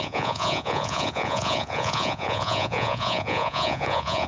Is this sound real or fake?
fake